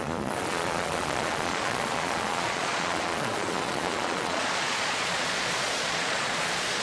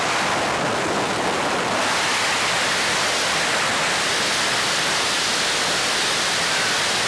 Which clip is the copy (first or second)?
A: first